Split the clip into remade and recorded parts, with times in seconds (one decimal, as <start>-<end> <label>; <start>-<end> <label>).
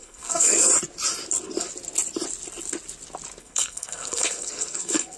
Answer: 0.0-0.7 remade; 0.7-3.4 recorded; 3.4-5.2 remade